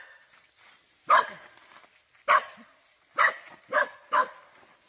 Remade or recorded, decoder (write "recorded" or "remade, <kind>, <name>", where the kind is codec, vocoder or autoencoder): recorded